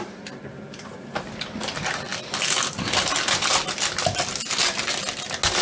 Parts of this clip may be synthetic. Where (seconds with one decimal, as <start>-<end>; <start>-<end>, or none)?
none